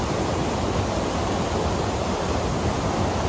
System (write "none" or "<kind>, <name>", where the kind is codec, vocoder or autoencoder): none